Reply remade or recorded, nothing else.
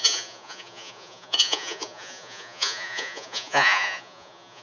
remade